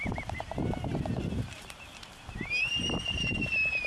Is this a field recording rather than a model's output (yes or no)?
no